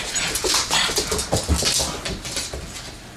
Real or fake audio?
real